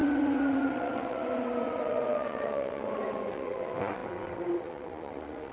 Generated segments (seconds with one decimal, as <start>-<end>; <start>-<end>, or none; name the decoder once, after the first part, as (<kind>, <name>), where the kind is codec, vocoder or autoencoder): 0.0-5.5 (vocoder, WaveNeXt)